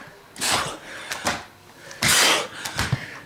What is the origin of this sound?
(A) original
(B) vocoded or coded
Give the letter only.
A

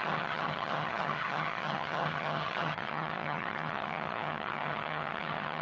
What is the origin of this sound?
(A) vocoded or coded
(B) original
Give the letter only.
A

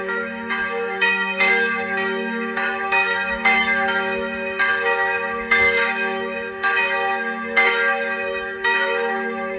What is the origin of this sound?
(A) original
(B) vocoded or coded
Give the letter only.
B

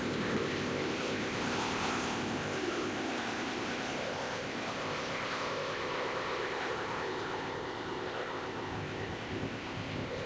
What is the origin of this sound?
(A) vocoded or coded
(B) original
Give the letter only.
A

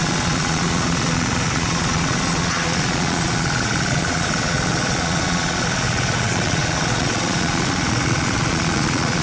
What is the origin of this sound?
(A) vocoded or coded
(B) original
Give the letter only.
A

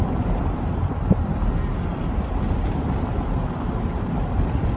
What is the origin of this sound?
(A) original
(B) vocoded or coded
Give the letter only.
A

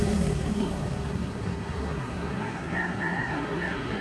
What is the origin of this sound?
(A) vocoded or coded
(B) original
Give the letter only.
A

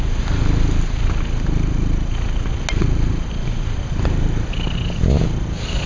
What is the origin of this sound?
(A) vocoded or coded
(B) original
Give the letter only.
B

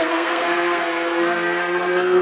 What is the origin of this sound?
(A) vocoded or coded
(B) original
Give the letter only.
A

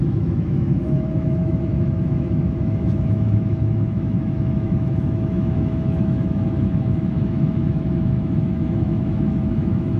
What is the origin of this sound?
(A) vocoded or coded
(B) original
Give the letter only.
A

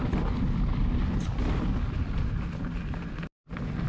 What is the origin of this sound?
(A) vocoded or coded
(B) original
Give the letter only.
B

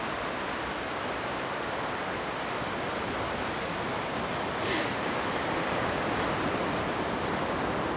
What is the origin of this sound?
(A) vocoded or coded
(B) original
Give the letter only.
B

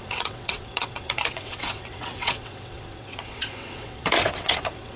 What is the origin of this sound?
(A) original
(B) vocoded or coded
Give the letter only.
B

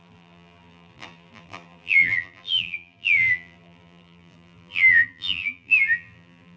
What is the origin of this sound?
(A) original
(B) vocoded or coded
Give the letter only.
B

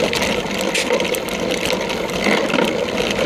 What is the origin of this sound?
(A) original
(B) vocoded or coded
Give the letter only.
A